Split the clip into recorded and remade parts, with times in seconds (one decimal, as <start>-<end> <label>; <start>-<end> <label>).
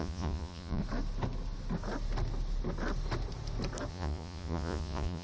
0.0-0.8 remade; 0.8-3.9 recorded; 3.9-5.2 remade